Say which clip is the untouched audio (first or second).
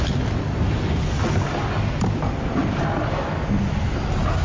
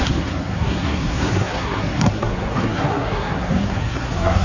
first